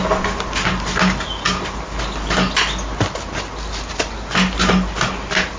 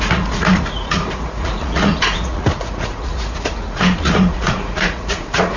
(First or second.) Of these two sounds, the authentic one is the first